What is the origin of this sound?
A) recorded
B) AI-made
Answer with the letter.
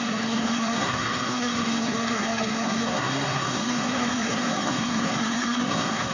B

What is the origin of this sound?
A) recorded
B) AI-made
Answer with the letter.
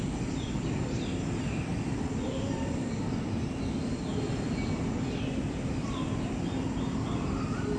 A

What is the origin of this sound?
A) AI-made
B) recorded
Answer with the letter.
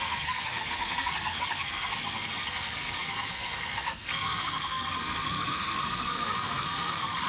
A